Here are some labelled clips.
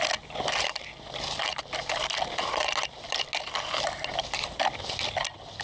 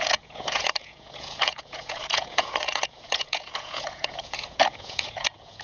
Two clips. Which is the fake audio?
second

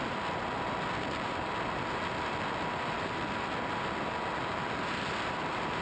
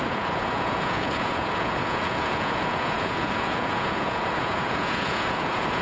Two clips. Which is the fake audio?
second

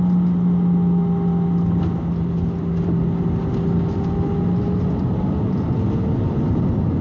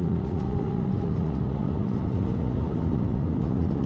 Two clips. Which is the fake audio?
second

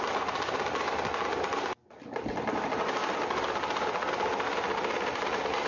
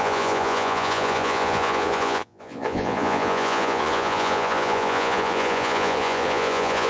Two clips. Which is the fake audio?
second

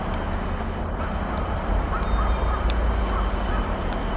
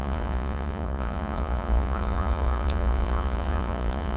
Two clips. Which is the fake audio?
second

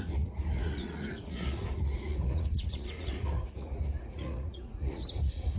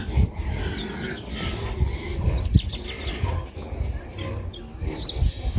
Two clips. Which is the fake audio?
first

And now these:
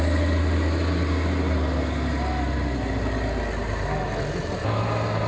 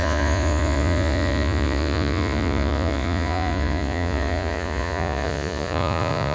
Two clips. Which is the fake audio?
second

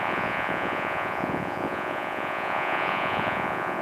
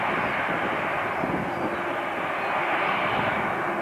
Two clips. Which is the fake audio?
first